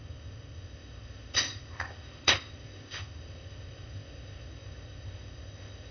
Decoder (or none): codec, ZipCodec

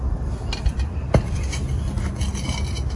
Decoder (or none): none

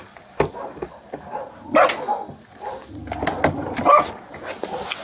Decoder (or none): none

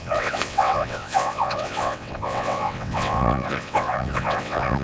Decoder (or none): vocoder, WaveNeXt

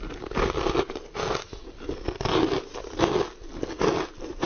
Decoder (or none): none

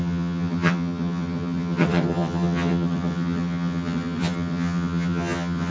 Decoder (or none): vocoder, HiFi-GAN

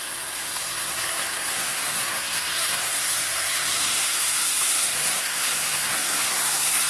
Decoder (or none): codec, SNAC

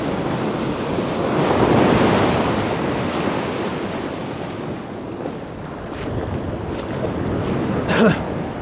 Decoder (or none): none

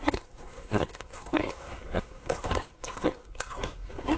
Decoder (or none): codec, SNAC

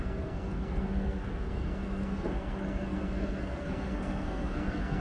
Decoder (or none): codec, SNAC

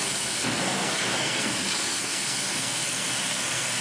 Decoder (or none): codec, SNAC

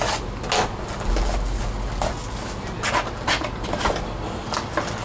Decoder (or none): none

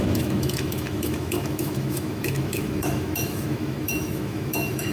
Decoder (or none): autoencoder, DAC-VAE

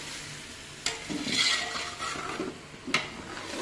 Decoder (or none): none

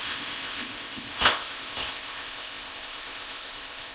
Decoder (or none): codec, ZipCodec